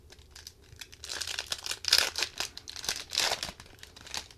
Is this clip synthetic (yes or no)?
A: no